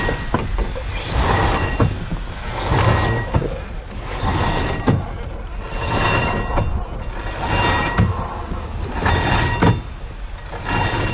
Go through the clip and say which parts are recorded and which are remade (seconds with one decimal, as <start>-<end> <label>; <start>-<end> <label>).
0.0-11.1 recorded